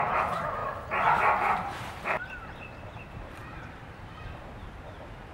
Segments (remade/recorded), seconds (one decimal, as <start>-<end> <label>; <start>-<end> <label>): 0.0-0.6 remade; 0.6-1.4 recorded; 1.4-5.3 remade